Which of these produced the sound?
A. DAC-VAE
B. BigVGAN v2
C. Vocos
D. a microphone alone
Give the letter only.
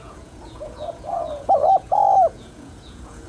C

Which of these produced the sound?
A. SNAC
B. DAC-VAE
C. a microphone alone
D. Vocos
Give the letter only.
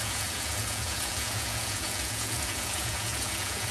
D